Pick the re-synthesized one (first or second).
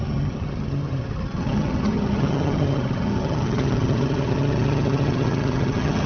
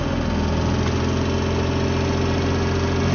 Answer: first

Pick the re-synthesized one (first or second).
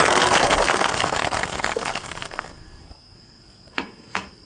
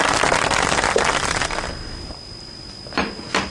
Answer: first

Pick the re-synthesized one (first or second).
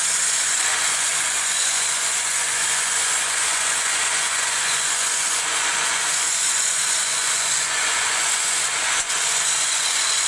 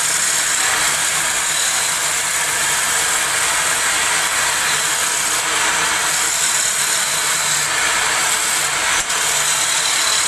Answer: first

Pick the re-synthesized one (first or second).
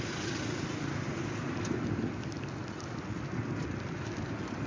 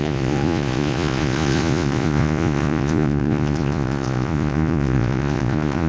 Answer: second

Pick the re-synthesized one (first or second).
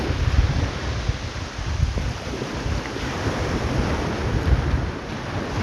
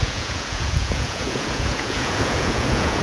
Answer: second